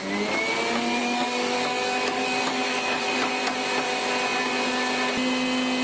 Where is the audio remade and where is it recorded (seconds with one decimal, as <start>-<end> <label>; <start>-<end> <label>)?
0.0-1.0 recorded; 1.0-3.3 remade; 3.3-5.8 recorded